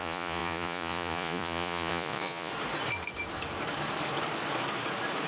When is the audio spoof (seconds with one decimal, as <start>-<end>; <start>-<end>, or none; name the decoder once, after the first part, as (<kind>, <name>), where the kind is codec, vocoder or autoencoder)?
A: 0.0-2.5 (vocoder, Vocos)